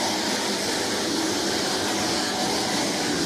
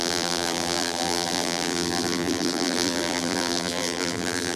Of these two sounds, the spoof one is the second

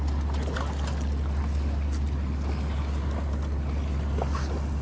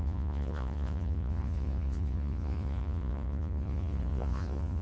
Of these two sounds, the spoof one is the second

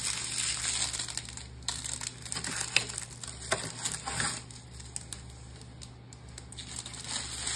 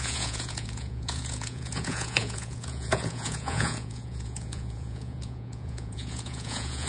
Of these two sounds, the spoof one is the second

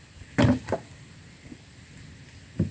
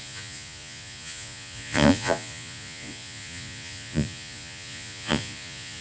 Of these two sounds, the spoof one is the second